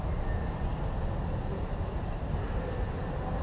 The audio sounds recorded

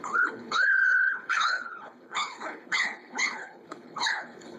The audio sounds remade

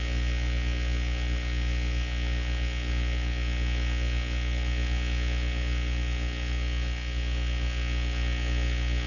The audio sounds recorded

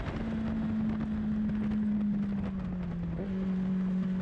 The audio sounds recorded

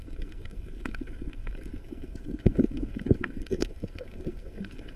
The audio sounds remade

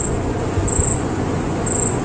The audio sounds remade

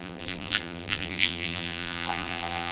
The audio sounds remade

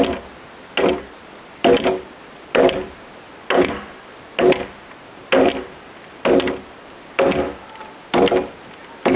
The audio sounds recorded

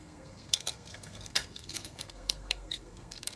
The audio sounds remade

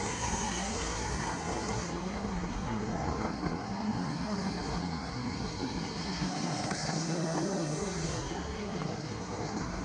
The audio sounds remade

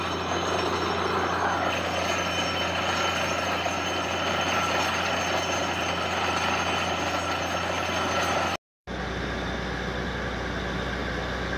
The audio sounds recorded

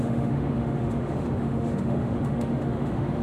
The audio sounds remade